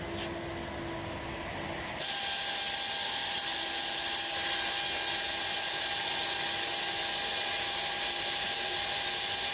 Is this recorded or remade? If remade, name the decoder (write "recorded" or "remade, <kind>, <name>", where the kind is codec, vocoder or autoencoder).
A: recorded